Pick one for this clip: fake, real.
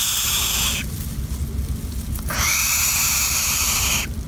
real